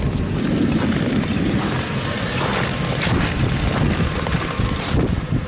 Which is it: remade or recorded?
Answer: recorded